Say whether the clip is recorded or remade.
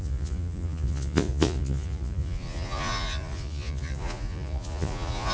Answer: remade